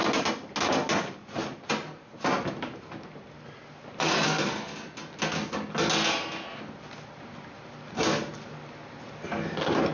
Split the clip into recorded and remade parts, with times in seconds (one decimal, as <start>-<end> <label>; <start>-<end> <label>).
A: 0.0-9.9 recorded